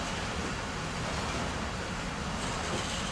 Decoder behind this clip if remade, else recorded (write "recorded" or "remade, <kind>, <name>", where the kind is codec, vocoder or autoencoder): recorded